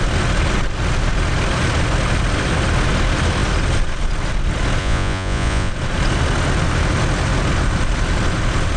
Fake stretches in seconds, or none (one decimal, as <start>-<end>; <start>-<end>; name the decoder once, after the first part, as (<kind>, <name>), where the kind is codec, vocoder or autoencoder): 4.8-5.7 (vocoder, Vocos)